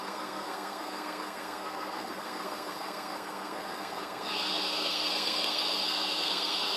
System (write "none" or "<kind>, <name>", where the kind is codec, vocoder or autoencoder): codec, SNAC